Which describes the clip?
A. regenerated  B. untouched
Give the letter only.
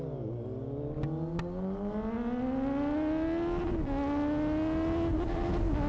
B